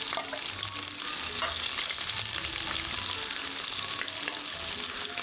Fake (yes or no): no